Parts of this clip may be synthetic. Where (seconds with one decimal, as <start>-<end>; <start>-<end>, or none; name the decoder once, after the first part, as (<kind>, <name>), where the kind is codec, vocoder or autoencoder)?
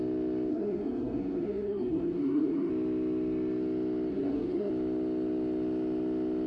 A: 0.5-2.7 (codec, SNAC); 4.1-4.7